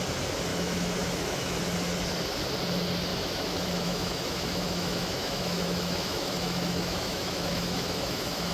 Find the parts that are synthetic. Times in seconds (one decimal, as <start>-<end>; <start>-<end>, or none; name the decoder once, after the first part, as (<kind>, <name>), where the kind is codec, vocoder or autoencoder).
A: 0.5-1.6 (autoencoder, DAC-VAE); 3.1-8.5